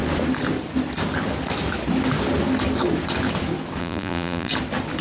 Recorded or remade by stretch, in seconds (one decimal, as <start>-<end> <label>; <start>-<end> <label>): 0.0-3.8 recorded; 3.8-4.5 remade; 4.5-5.0 recorded